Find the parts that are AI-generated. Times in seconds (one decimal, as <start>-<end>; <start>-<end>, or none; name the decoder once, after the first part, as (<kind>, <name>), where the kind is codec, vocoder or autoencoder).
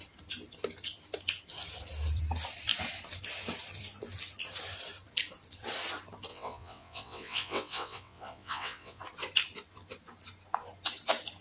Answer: 6.3-9.0 (vocoder, WaveNeXt)